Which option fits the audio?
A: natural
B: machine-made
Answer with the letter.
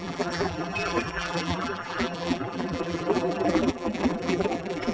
B